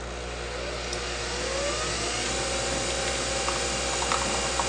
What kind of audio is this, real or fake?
real